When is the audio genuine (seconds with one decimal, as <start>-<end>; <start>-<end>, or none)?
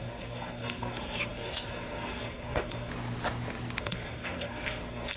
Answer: 2.9-3.8